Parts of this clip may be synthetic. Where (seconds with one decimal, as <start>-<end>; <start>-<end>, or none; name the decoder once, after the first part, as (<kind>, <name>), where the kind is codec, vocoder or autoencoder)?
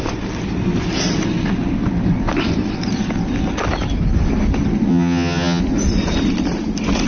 4.9-5.6 (vocoder, HiFi-GAN)